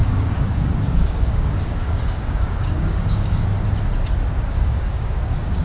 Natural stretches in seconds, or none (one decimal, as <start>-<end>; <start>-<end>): 3.4-4.5